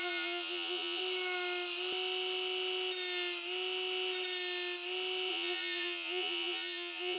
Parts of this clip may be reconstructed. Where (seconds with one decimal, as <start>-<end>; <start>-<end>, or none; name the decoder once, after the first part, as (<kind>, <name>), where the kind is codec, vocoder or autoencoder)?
0.0-1.0 (vocoder, Vocos); 5.3-7.2